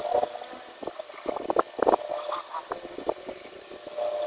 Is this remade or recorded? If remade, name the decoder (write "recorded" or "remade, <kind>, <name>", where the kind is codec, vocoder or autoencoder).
recorded